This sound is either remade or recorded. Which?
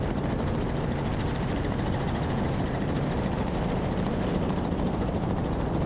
remade